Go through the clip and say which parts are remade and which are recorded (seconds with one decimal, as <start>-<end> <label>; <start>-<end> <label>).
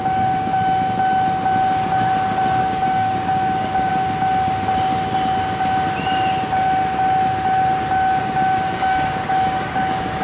0.0-0.5 remade; 0.5-2.6 recorded; 2.6-3.9 remade; 3.9-8.2 recorded; 8.2-10.2 remade